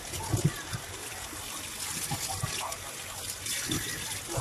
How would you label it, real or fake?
real